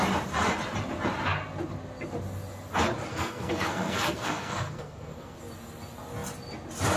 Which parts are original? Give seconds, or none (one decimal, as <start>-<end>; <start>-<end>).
0.0-3.1; 5.4-7.0